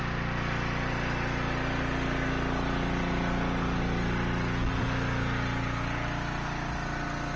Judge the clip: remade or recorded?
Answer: recorded